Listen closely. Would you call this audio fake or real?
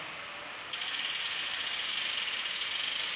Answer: real